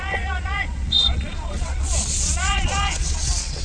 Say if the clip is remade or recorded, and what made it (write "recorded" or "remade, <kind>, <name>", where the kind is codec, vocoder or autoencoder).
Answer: remade, vocoder, Vocos